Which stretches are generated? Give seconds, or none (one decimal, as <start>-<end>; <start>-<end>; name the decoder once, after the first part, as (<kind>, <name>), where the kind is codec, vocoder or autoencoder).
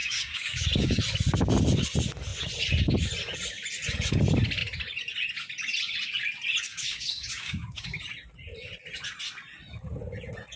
0.0-1.0 (codec, DAC); 6.7-8.0